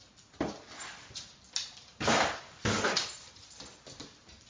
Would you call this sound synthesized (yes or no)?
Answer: no